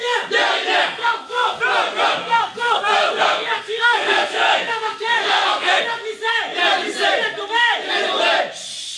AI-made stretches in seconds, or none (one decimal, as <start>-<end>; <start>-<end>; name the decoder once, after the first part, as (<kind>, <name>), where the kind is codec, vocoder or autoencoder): 0.9-1.6 (codec, SNAC); 2.2-5.8